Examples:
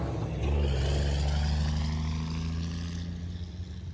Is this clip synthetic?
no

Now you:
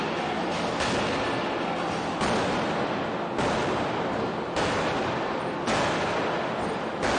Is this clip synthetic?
no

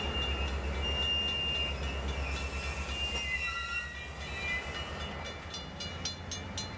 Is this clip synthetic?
no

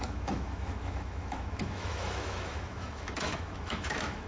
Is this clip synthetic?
yes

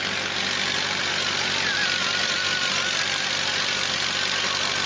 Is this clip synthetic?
no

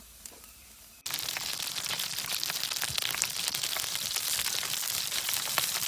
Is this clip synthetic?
no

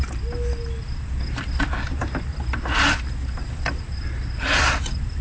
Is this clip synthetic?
no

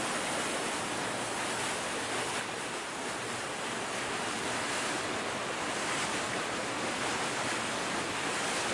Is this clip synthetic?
no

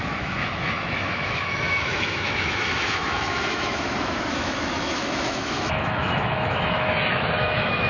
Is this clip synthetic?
yes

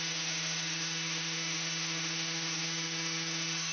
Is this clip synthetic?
yes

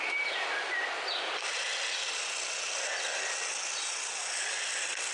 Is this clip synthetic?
no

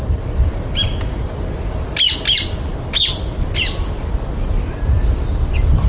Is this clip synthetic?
no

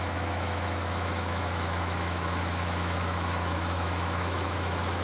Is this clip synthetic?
yes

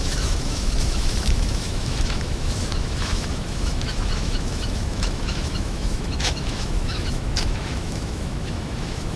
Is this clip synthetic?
yes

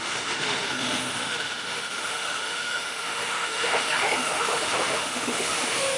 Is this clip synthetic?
yes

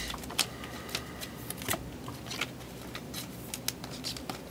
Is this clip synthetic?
no